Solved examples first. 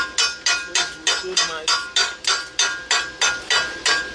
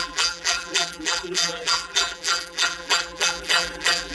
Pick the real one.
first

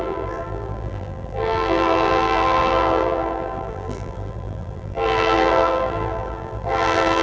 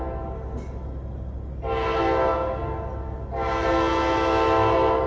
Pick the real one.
second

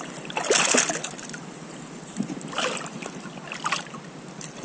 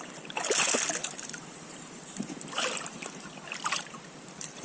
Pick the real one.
first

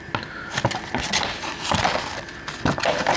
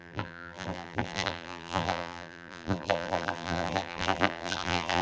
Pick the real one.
first